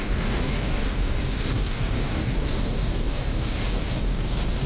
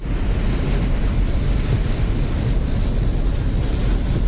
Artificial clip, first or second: first